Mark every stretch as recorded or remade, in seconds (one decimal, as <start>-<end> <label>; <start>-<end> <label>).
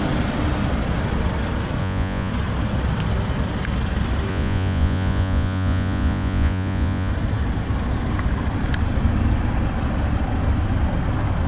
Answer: 0.0-1.8 recorded; 1.8-2.3 remade; 2.3-4.3 recorded; 4.3-7.1 remade; 7.1-11.5 recorded